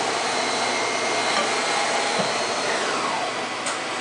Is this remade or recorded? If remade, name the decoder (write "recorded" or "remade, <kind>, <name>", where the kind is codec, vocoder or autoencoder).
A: recorded